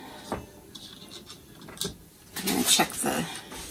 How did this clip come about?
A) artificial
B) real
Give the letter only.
B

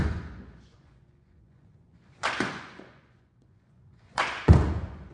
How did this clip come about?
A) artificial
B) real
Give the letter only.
A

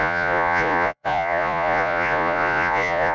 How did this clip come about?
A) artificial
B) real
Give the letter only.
A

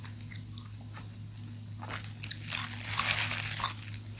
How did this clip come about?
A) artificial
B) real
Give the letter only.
B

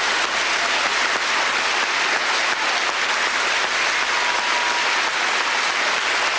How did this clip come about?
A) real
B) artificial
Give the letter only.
A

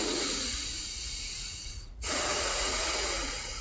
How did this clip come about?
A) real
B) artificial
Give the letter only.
B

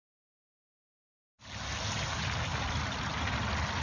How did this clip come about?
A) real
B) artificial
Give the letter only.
A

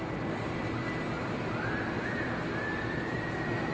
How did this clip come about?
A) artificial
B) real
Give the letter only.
B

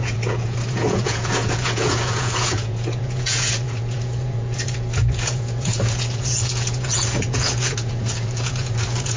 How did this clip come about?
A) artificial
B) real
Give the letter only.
A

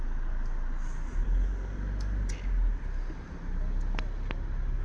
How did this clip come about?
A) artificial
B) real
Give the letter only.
B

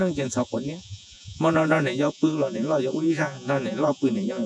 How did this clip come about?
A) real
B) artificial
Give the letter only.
B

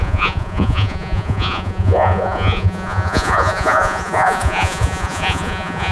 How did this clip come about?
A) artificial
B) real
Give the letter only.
A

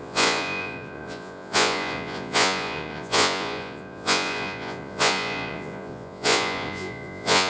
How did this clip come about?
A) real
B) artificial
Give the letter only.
B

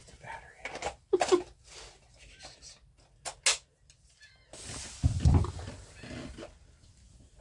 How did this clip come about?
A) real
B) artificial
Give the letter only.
A